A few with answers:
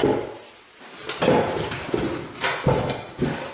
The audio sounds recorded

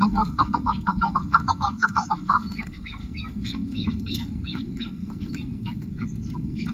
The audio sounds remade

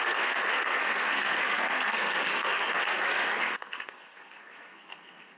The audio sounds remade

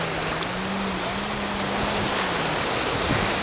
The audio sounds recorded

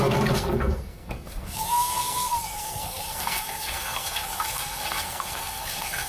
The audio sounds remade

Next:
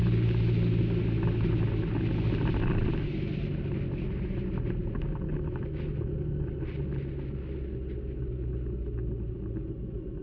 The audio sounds recorded